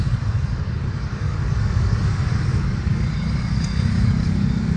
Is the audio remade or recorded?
remade